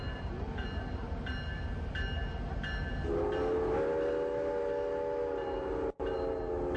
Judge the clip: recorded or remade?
recorded